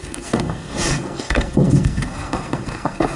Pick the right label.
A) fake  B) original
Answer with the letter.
A